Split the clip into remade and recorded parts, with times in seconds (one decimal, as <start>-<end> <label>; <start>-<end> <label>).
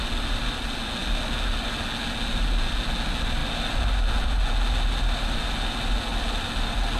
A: 0.0-7.0 recorded